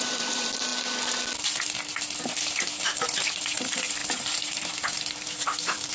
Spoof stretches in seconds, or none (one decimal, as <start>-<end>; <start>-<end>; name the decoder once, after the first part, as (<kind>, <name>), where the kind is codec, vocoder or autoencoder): 0.0-0.7 (vocoder, BigVGAN v2); 3.3-4.0; 5.3-5.9